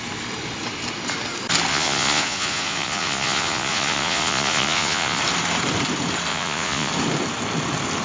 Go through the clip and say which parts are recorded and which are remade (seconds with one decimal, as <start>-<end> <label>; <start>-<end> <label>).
0.0-1.7 recorded; 1.7-5.2 remade; 5.2-6.3 recorded; 6.3-6.9 remade; 6.9-8.0 recorded